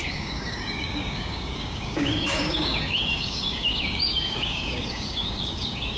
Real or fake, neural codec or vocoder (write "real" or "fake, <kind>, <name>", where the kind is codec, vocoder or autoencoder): fake, codec, DAC